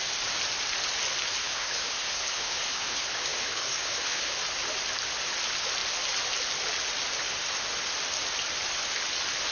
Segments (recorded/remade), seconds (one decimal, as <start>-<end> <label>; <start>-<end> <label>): 0.0-1.4 recorded; 1.4-4.4 remade; 4.4-9.5 recorded